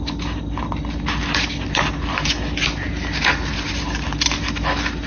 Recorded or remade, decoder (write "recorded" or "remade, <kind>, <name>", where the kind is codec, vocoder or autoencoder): recorded